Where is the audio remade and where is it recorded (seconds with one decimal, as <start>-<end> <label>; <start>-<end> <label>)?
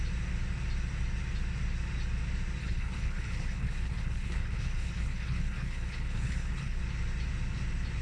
0.0-2.6 recorded; 2.6-6.8 remade; 6.8-8.0 recorded